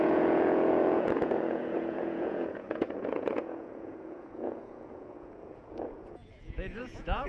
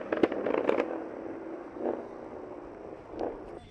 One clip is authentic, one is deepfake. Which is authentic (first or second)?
second